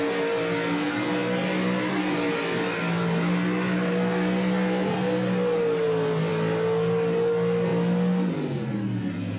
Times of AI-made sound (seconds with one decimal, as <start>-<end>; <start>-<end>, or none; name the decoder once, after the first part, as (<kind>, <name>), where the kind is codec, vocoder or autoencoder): none